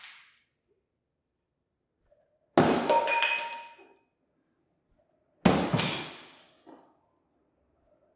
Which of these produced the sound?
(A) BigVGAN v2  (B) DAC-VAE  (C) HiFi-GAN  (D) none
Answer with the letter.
D